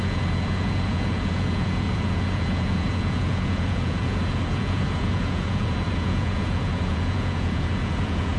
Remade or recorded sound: remade